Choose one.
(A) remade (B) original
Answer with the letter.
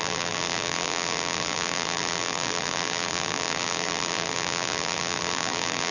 A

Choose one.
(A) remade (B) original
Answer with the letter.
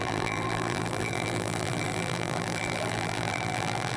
A